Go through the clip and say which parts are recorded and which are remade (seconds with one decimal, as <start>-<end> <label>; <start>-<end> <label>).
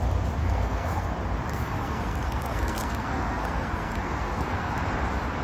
0.0-0.4 recorded; 0.4-1.1 remade; 1.1-1.5 recorded; 1.5-4.7 remade; 4.7-5.4 recorded